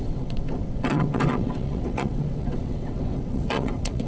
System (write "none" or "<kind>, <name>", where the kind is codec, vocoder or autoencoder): vocoder, WaveNeXt